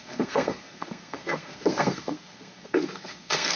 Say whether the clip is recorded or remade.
remade